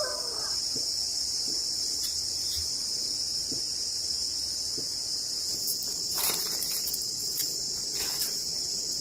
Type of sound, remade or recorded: remade